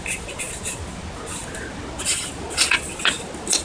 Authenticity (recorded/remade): recorded